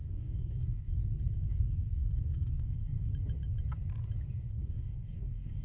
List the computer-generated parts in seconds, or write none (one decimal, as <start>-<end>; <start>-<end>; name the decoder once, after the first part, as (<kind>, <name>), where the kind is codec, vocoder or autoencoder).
0.0-1.0 (codec, DAC); 1.5-3.1; 4.5-5.6